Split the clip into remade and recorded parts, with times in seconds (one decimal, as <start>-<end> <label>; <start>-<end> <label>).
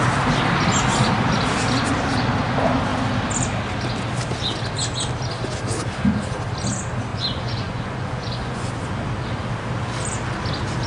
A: 0.0-7.1 recorded; 7.1-8.7 remade; 8.7-10.9 recorded